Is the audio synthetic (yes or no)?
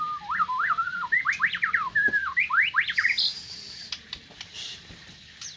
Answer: no